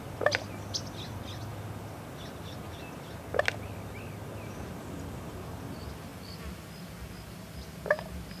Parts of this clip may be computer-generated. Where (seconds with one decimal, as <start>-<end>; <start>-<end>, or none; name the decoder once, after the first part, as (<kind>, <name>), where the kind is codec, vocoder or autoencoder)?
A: none